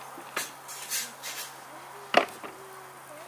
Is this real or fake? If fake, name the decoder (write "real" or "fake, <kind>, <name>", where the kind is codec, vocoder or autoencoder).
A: real